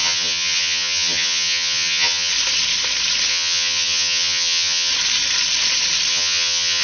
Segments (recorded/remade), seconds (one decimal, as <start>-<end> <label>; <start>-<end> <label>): 0.0-2.3 remade; 2.3-3.3 recorded; 3.3-4.9 remade; 4.9-6.1 recorded; 6.1-6.8 remade